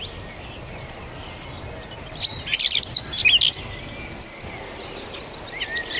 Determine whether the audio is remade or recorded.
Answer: recorded